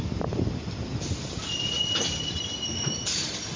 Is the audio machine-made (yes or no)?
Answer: yes